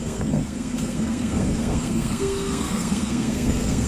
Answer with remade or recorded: remade